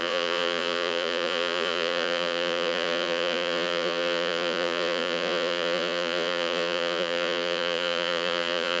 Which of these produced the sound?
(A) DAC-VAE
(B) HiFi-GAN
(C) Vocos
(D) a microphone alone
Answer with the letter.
C